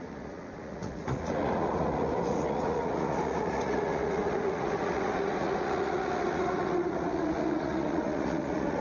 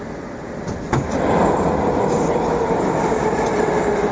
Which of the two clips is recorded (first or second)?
second